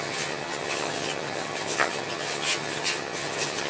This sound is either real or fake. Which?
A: fake